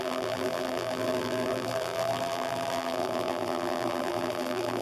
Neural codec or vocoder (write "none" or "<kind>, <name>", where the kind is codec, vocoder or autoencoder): vocoder, BigVGAN v2